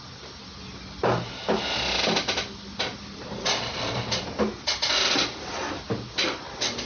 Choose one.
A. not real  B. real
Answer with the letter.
B